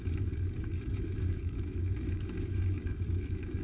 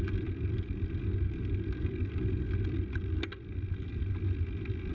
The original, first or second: second